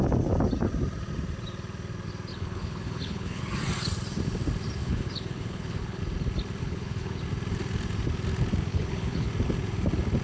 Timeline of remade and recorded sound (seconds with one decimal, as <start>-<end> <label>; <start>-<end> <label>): 0.0-2.3 recorded; 2.3-3.4 remade; 3.4-4.8 recorded; 4.8-6.0 remade; 6.0-6.6 recorded; 6.6-7.2 remade; 7.2-8.7 recorded; 8.7-9.3 remade; 9.3-10.2 recorded